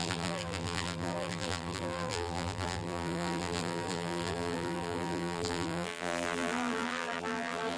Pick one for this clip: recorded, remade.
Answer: remade